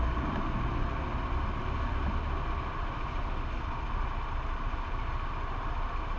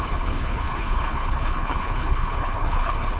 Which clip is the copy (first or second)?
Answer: second